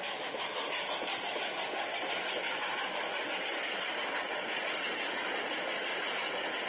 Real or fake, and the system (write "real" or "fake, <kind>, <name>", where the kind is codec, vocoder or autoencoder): real